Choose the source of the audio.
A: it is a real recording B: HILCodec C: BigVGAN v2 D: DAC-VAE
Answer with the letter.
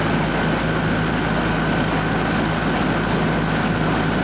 A